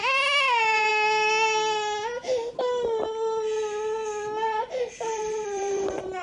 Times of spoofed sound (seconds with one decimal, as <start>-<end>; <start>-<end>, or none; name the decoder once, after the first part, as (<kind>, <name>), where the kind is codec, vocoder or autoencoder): 0.0-0.9 (vocoder, BigVGAN v2); 4.6-6.2